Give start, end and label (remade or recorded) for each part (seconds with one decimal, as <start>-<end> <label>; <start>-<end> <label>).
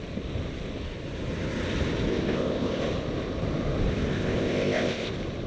0.0-2.1 recorded; 2.1-2.8 remade; 2.8-4.1 recorded; 4.1-5.1 remade; 5.1-5.5 recorded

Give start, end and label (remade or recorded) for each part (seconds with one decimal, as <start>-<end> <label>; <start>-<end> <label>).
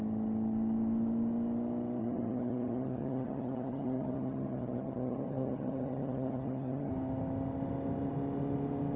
0.0-2.0 recorded; 2.0-6.9 remade; 6.9-9.0 recorded